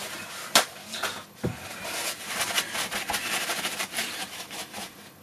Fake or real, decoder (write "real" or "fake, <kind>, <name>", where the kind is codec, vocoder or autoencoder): real